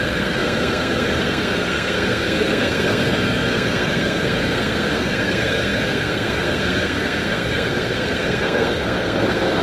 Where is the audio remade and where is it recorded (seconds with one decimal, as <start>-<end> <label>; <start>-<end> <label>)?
0.0-9.6 remade